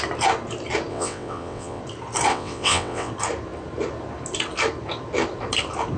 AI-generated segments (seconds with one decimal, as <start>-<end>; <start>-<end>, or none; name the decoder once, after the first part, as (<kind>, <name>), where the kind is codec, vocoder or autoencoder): 0.9-1.8 (vocoder, WaveNeXt); 2.3-3.1